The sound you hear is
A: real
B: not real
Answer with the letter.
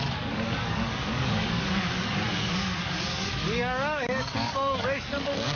B